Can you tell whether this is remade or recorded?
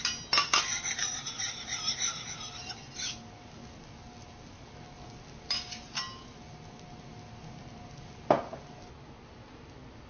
recorded